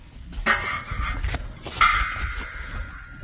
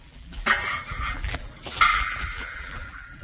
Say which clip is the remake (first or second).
second